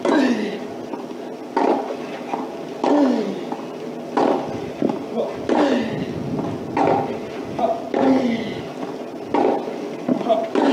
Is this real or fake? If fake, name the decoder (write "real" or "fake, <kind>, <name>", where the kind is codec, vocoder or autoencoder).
real